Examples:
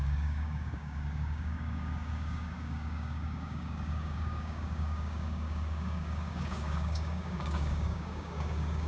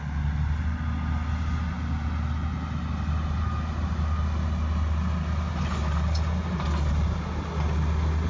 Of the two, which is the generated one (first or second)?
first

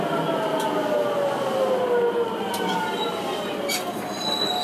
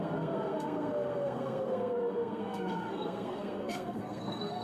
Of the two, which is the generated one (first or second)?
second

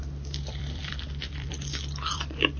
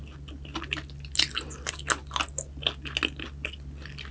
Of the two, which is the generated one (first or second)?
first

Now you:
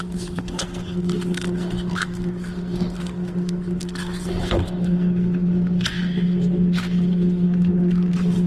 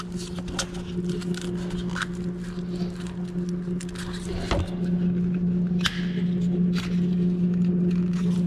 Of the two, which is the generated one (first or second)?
first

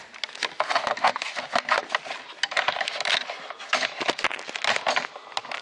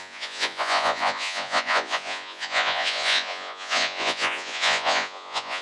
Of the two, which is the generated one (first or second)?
second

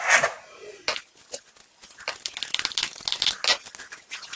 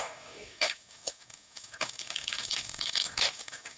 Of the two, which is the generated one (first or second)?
second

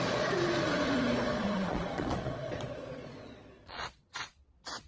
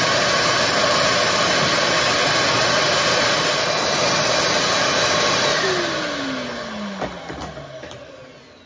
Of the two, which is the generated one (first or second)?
first